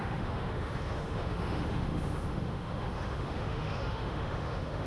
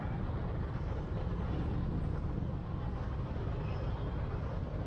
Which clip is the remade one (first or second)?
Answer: first